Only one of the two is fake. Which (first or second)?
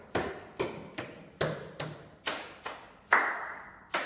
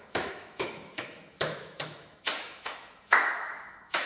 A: second